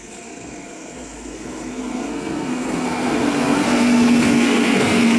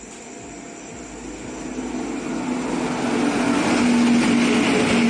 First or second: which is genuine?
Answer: second